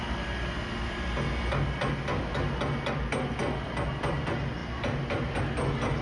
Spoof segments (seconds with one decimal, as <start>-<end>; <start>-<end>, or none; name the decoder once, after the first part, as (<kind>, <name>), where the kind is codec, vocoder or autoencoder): none